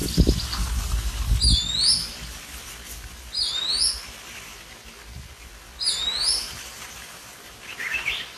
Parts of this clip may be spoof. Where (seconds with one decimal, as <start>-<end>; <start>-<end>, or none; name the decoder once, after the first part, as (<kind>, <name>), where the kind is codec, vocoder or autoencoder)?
6.2-8.4 (vocoder, BigVGAN v2)